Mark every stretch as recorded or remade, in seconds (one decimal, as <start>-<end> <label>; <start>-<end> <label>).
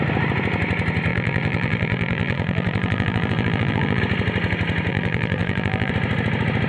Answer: 0.0-1.1 recorded; 1.1-4.0 remade; 4.0-4.9 recorded; 4.9-5.9 remade; 5.9-6.7 recorded